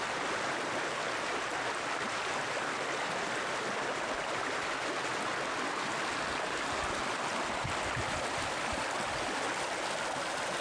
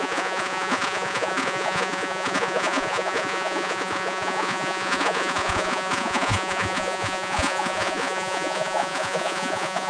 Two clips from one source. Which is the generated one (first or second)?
second